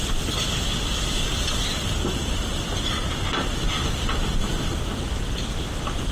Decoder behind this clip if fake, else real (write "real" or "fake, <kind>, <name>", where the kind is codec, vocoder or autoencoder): real